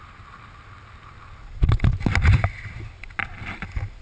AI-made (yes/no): no